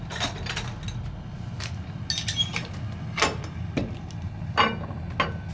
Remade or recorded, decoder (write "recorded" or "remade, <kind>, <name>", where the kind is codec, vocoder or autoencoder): recorded